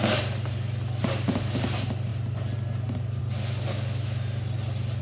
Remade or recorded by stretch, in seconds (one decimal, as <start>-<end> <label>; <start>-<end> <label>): 0.0-5.0 recorded